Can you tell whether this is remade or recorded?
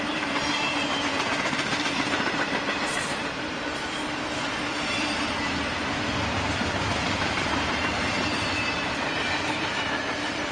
remade